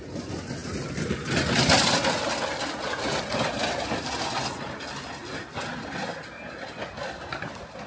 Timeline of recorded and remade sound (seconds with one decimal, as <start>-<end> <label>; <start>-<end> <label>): 0.0-7.9 recorded